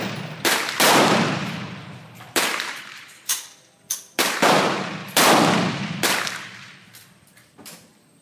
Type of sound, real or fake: fake